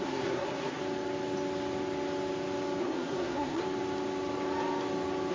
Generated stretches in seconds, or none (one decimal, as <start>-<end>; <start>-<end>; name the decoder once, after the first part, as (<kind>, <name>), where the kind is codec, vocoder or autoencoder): 0.0-0.8 (codec, SNAC); 2.8-3.6